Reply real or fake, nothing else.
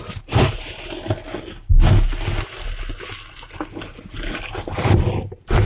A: real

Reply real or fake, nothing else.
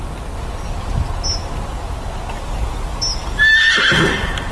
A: real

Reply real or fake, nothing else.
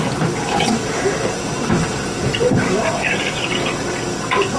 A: fake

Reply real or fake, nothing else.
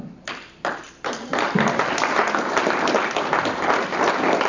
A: real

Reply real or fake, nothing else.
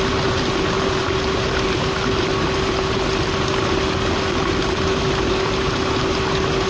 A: real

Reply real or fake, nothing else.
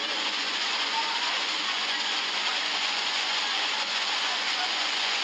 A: fake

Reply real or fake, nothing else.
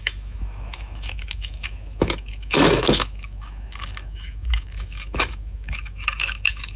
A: fake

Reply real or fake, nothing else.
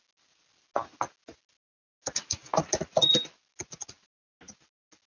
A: real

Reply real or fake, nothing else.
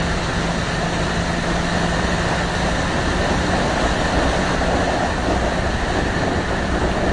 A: real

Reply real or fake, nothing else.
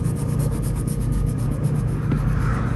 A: fake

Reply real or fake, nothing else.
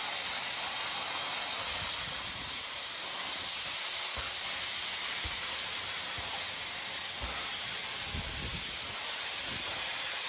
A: real